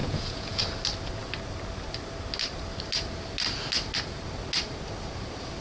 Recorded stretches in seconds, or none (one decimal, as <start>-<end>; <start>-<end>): 0.6-5.6